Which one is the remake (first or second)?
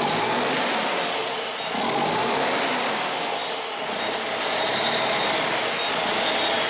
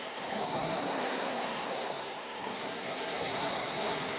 second